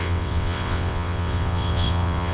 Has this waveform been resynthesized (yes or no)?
yes